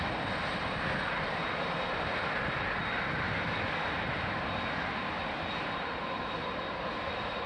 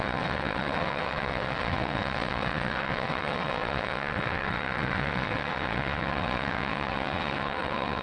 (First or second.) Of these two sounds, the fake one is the second